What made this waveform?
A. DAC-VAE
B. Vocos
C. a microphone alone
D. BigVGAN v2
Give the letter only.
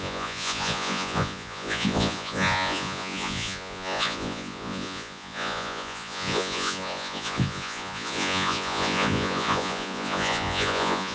B